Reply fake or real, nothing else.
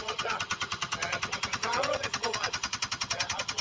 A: fake